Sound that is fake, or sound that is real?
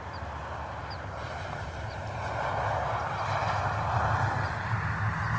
real